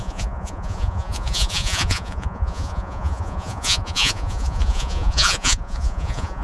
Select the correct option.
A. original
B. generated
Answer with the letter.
B